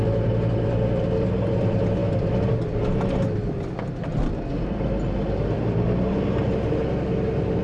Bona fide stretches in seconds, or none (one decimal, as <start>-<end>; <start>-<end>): 0.0-7.6